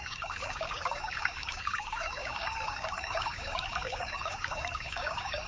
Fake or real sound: fake